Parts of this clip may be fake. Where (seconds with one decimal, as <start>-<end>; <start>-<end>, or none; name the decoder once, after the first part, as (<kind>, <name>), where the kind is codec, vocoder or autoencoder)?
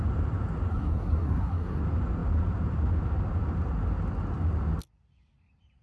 0.7-1.8 (codec, SNAC)